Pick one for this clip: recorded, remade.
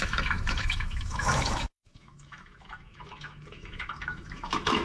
remade